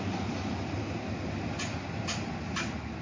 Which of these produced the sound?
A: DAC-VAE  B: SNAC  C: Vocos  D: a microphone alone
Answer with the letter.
D